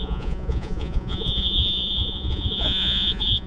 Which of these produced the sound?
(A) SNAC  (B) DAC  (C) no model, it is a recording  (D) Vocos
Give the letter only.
D